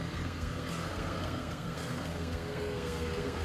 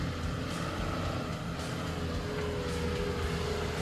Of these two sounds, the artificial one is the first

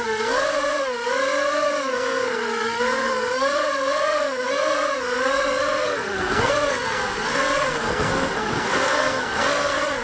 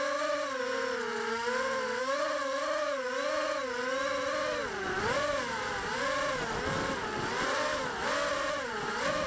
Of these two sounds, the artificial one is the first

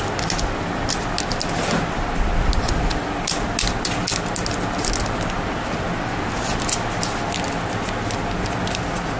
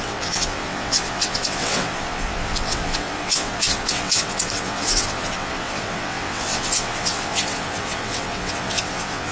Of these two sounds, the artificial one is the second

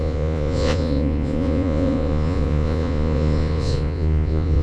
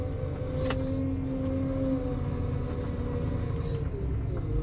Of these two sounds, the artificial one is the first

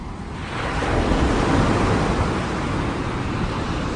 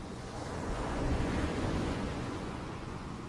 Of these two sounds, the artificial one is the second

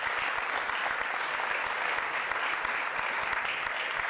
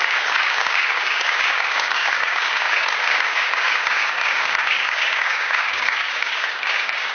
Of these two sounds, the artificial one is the second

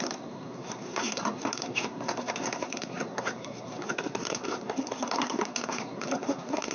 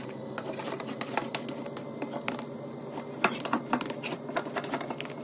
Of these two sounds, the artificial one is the first